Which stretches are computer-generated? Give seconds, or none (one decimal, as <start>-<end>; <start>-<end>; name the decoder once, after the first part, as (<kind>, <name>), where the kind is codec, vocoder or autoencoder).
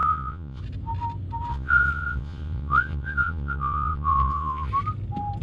0.0-0.6 (vocoder, Vocos); 1.5-4.7